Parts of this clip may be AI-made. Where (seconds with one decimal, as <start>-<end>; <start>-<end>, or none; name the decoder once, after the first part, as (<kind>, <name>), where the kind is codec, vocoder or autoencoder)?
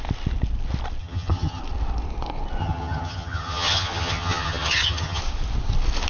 1.0-1.6 (vocoder, HiFi-GAN); 2.6-5.2